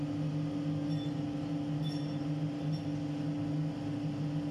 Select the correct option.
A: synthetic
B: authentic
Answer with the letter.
B